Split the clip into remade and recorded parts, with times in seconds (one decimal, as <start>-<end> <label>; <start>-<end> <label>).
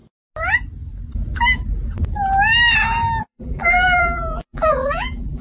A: 0.0-3.2 recorded; 3.2-5.4 remade